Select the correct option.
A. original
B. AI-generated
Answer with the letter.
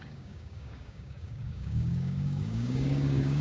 B